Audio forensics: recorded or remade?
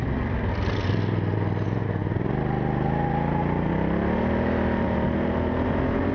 recorded